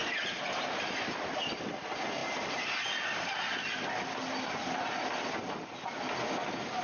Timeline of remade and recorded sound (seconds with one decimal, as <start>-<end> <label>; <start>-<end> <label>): 0.0-6.8 recorded